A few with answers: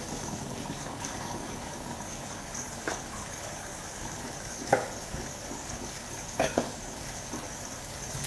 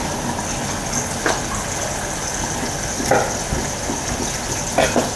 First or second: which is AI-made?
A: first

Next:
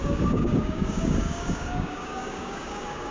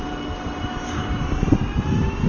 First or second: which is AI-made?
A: first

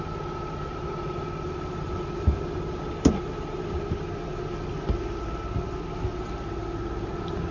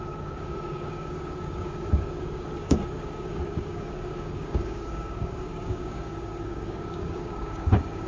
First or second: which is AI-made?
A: second